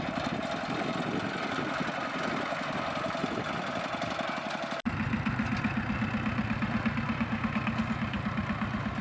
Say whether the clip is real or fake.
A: real